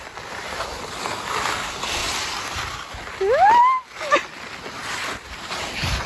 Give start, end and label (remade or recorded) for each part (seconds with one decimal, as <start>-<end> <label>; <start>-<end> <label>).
0.0-6.1 recorded